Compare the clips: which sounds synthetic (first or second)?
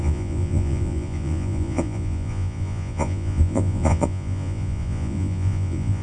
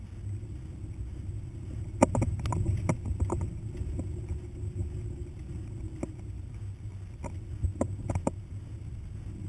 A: first